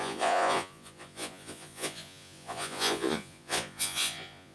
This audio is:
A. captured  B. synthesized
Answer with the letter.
B